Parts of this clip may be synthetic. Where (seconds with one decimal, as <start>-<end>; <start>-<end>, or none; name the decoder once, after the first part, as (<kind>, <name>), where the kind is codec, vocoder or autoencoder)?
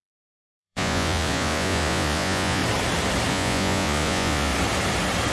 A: 0.0-2.6 (vocoder, Vocos); 3.3-4.5